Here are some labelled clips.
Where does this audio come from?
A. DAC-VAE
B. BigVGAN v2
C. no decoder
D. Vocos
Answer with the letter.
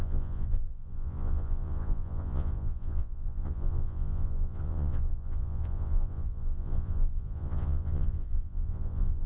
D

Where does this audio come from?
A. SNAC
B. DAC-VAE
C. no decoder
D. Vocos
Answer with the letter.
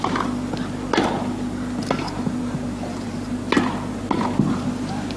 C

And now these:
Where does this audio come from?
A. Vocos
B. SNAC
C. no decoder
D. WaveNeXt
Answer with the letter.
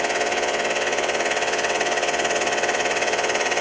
D